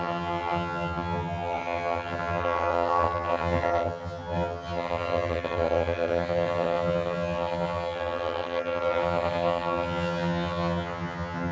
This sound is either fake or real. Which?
fake